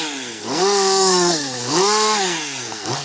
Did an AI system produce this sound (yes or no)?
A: yes